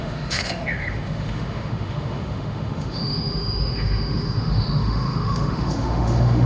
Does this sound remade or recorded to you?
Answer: remade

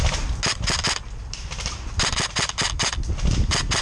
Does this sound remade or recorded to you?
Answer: recorded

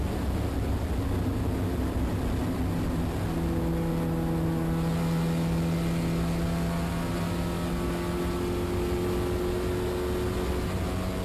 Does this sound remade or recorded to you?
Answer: recorded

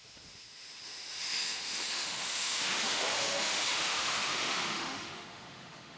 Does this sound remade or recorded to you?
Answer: remade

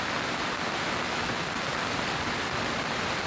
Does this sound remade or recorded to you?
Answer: recorded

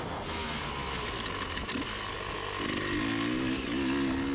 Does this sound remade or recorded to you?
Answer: recorded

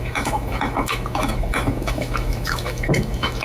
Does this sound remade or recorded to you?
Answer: remade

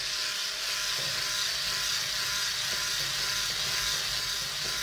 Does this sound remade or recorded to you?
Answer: recorded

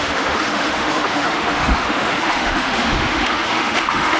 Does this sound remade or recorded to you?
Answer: remade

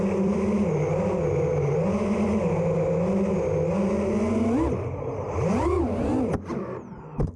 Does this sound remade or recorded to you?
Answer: recorded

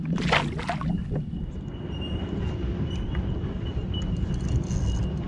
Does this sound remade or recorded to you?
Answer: recorded